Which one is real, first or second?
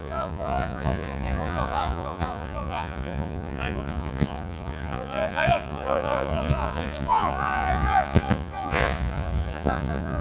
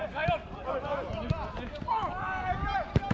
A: second